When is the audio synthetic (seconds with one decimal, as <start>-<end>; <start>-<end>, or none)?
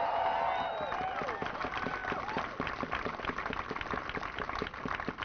none